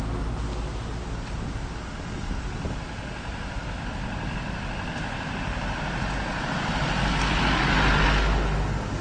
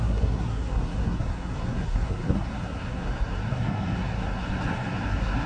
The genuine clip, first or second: first